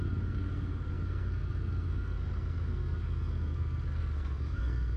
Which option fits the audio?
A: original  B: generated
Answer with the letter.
B